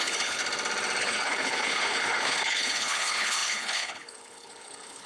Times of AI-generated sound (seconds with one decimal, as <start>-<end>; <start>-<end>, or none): 0.0-0.4; 1.0-5.1